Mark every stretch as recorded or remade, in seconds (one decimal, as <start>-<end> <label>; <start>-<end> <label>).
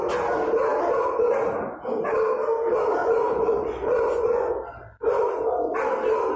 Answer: 0.0-3.0 recorded; 3.0-4.5 remade; 4.5-6.4 recorded